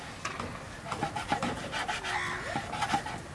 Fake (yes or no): no